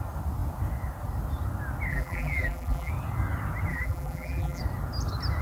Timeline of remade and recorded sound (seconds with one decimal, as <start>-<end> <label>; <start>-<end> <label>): 0.0-1.9 recorded; 1.9-2.9 remade; 2.9-3.7 recorded; 3.7-4.6 remade; 4.6-5.4 recorded